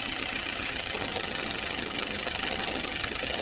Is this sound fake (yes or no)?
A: yes